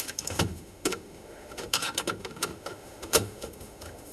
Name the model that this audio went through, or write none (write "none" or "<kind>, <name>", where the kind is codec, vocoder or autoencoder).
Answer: autoencoder, DAC-VAE